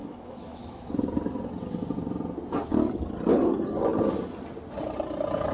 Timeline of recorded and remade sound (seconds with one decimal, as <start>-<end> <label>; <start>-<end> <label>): 0.0-0.9 remade; 0.9-5.5 recorded